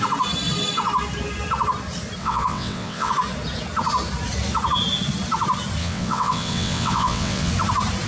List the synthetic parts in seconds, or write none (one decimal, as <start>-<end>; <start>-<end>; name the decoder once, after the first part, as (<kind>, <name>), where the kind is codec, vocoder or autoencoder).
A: 2.2-3.1 (vocoder, WaveNeXt); 5.8-7.5